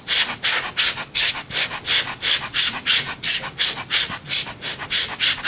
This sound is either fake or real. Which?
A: real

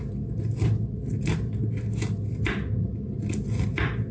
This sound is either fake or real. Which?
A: real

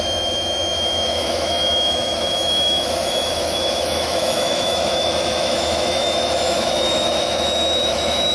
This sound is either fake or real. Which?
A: fake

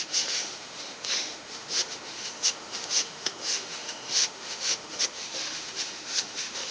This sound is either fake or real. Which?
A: fake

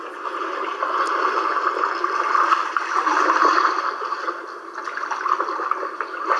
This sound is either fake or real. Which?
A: real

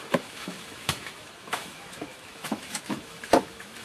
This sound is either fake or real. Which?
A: fake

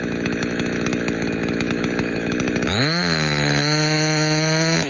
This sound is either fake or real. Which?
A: fake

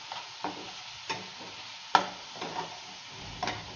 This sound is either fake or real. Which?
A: real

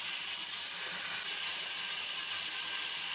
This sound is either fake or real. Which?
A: real